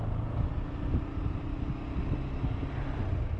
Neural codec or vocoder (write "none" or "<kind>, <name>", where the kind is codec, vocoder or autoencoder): none